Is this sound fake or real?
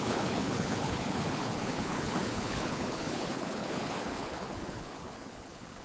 fake